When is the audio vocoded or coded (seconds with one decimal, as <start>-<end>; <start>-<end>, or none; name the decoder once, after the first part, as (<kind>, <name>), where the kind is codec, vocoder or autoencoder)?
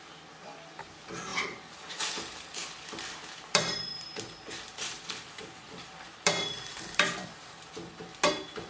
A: 1.3-2.1 (vocoder, BigVGAN v2); 2.6-7.8